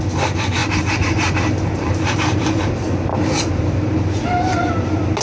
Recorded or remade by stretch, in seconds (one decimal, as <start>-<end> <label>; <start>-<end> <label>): 0.0-0.6 recorded; 0.6-2.7 remade; 2.7-3.1 recorded; 3.1-4.7 remade; 4.7-5.2 recorded